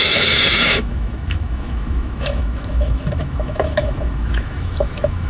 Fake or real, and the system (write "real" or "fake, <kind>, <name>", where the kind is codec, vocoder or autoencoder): fake, autoencoder, DAC-VAE